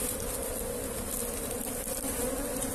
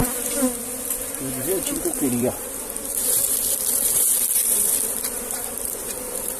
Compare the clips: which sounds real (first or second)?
first